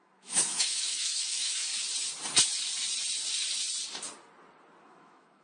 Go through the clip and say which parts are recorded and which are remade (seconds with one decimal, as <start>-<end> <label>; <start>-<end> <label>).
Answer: 0.0-1.7 remade; 1.7-4.8 recorded; 4.8-5.4 remade